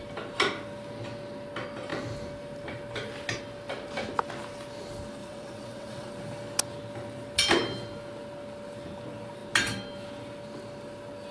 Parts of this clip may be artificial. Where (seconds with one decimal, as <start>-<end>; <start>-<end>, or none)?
5.2-6.1